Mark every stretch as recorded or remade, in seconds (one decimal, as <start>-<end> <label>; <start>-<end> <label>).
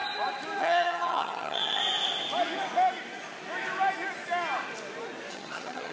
0.0-0.6 recorded; 0.6-1.8 remade; 1.8-5.3 recorded; 5.3-5.9 remade